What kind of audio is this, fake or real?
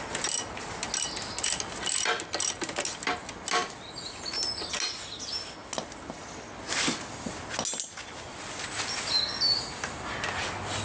real